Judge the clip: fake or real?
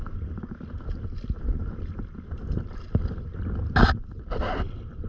real